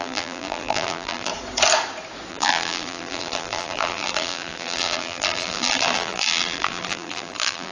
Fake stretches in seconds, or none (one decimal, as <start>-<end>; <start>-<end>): 0.0-1.3; 2.3-7.7